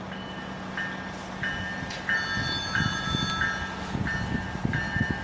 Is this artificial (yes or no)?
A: no